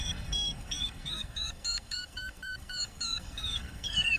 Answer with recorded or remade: remade